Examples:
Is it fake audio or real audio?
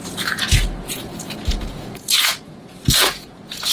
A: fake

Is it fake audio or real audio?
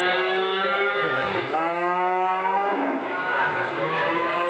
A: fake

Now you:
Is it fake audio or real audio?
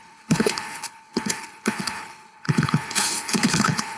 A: fake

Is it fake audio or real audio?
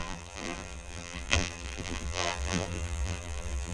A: fake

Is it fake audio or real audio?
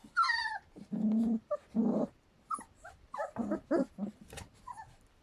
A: fake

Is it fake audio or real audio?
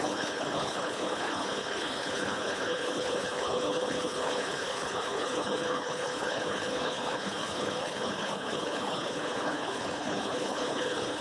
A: fake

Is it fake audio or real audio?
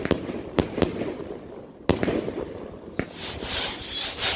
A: real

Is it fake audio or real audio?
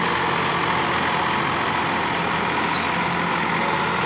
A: real